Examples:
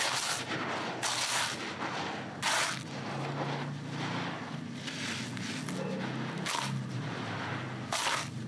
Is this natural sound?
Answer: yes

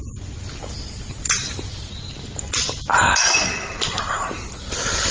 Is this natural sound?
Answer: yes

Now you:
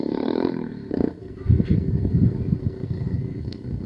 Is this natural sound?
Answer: no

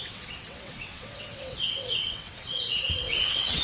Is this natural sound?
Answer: no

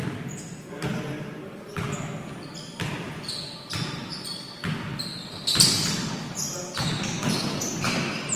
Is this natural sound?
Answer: yes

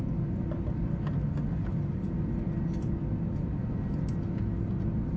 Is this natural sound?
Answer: yes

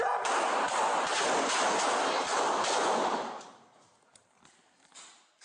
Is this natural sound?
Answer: yes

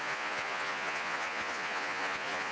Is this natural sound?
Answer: no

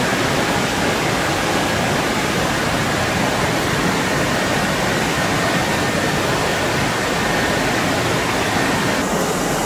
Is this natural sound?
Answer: yes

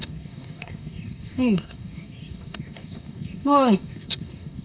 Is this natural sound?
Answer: no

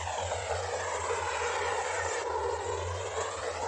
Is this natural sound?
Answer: yes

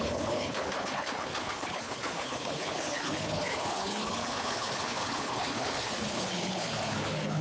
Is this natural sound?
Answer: no